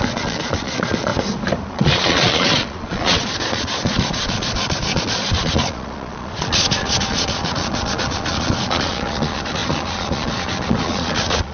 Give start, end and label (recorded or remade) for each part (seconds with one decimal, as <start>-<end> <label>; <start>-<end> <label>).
0.0-1.1 remade; 1.1-1.7 recorded; 1.7-11.5 remade

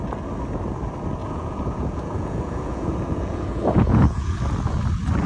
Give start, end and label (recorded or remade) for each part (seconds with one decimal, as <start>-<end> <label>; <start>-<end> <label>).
0.0-1.2 recorded; 1.2-4.4 remade; 4.4-5.3 recorded

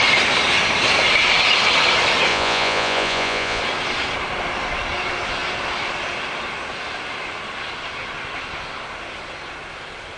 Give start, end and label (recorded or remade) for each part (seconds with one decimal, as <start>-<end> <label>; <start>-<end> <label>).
0.0-2.3 recorded; 2.3-3.6 remade; 3.6-10.2 recorded

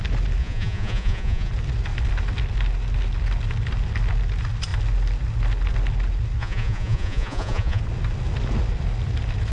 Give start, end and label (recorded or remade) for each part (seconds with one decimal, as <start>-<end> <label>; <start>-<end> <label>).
0.0-0.4 recorded; 0.4-1.5 remade; 1.5-6.4 recorded; 6.4-7.8 remade; 7.8-9.5 recorded

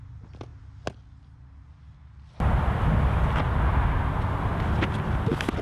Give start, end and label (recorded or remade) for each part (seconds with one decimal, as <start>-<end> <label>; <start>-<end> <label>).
0.0-5.6 recorded

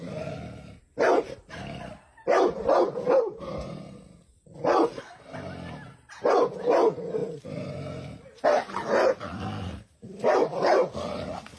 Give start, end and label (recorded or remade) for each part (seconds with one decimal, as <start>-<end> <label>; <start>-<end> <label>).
0.0-11.6 recorded

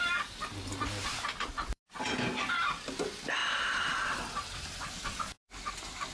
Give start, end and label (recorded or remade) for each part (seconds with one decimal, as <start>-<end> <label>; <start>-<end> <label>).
0.0-6.1 recorded